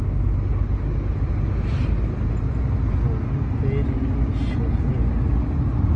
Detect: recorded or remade recorded